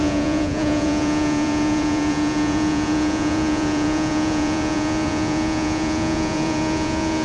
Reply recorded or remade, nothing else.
remade